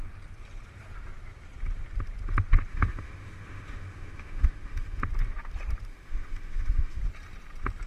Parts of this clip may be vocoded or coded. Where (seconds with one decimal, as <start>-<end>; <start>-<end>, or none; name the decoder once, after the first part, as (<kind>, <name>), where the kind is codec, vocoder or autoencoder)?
2.7-5.0 (autoencoder, DAC-VAE); 5.9-7.0